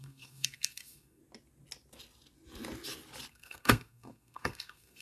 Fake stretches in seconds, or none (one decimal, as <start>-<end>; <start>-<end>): 0.0-1.2; 3.3-5.0